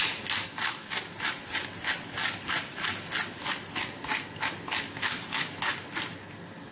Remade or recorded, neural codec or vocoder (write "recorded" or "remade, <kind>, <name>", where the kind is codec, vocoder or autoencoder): recorded